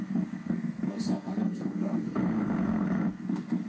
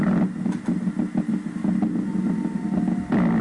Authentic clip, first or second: second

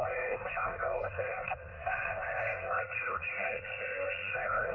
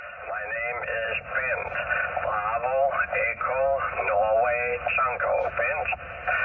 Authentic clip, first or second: second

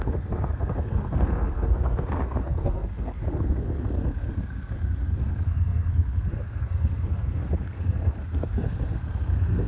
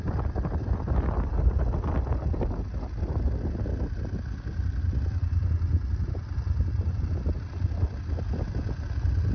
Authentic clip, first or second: second